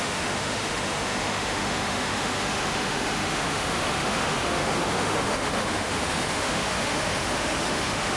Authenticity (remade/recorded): remade